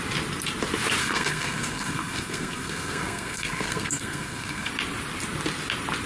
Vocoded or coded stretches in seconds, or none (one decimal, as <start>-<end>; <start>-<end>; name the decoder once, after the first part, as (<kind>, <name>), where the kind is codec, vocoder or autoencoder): 1.0-4.7 (codec, SNAC)